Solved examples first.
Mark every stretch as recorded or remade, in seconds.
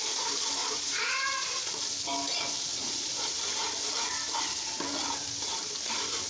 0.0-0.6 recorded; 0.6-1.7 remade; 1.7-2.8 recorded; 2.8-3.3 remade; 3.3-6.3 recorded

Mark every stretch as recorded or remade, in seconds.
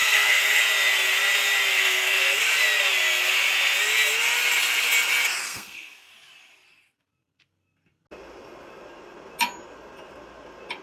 0.0-0.6 remade; 0.6-1.7 recorded; 1.7-2.4 remade; 2.4-5.4 recorded; 5.4-6.1 remade; 6.1-10.8 recorded